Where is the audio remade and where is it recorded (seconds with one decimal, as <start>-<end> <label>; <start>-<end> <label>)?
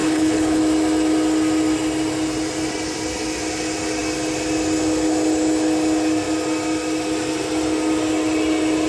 0.0-0.6 remade; 0.6-8.9 recorded